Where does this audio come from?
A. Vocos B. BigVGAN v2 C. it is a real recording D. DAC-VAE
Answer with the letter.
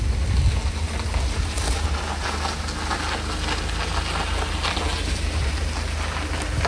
C